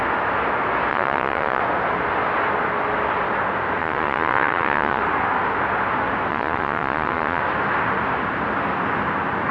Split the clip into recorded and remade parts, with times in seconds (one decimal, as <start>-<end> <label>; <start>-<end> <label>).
0.0-0.9 recorded; 0.9-1.6 remade; 1.6-3.8 recorded; 3.8-5.0 remade; 5.0-6.3 recorded; 6.3-7.4 remade; 7.4-9.5 recorded